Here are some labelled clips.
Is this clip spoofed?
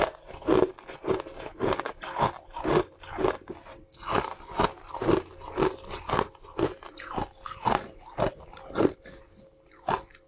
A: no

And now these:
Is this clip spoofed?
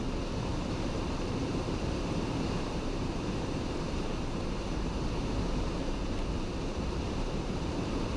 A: yes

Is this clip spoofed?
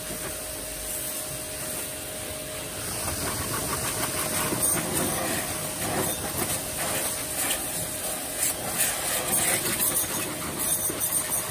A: no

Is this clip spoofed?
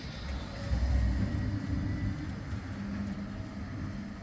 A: no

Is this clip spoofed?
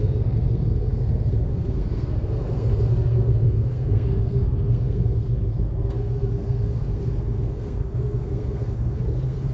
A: yes